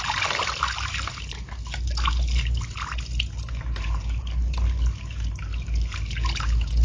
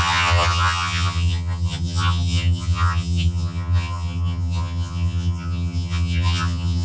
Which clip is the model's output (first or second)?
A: second